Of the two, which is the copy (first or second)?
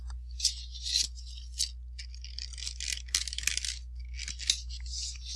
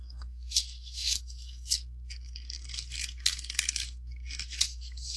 second